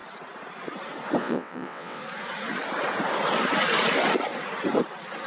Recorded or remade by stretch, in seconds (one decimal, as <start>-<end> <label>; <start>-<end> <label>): 0.0-1.2 recorded; 1.2-2.0 remade; 2.0-5.3 recorded